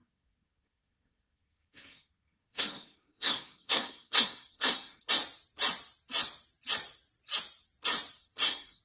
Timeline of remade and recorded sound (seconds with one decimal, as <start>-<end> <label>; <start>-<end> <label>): 0.0-5.1 remade; 5.1-8.2 recorded; 8.2-8.8 remade